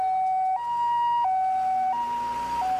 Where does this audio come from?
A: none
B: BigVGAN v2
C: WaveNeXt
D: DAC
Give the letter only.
A